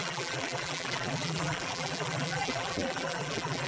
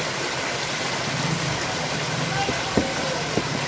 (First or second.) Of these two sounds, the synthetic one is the first